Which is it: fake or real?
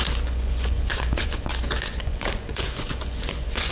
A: fake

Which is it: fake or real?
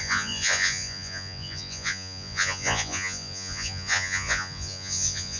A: fake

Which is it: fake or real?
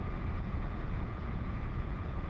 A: fake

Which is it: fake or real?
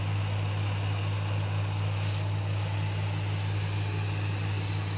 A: real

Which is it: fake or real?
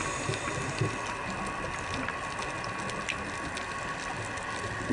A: real